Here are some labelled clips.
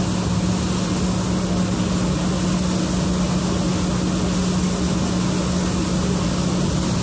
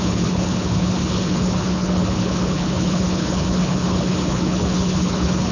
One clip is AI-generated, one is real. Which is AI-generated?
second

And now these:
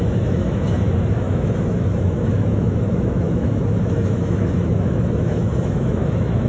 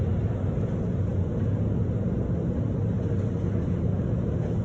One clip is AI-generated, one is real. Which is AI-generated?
first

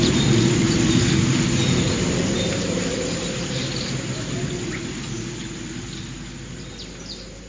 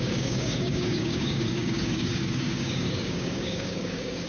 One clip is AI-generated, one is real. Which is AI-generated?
second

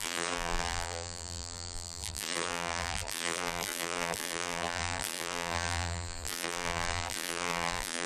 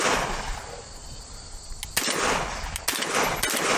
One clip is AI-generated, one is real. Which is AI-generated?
first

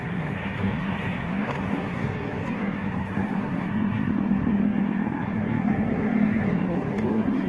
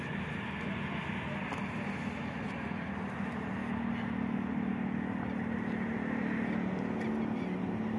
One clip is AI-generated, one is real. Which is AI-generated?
first